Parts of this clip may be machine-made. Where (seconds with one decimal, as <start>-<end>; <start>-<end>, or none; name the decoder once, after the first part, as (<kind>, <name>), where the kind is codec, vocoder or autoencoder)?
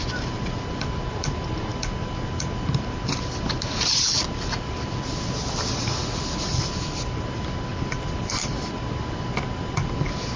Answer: none